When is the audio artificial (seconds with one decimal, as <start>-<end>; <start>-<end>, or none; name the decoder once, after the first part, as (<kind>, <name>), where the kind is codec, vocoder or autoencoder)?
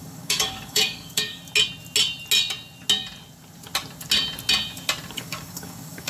0.0-1.4 (codec, DAC); 5.1-6.1